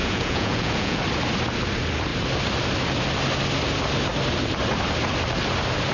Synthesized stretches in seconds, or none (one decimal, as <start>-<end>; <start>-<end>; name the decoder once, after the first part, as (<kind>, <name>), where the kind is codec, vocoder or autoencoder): 0.0-1.0 (vocoder, Vocos)